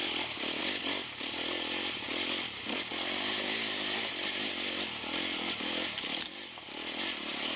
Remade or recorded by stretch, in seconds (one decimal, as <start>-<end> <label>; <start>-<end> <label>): 0.0-7.6 recorded